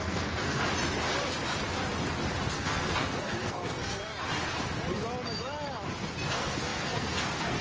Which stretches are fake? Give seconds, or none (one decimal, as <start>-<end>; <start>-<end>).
0.0-0.6; 2.5-4.1; 6.3-7.6